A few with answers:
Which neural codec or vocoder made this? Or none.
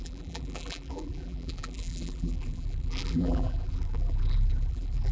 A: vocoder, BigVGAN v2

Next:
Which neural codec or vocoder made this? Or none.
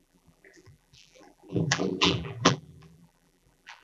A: vocoder, BigVGAN v2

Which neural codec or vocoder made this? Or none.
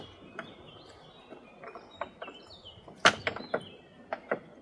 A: none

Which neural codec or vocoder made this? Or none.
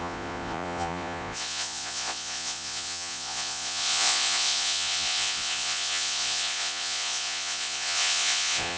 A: vocoder, Vocos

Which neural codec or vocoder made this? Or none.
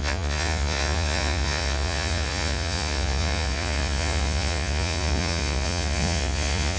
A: vocoder, Vocos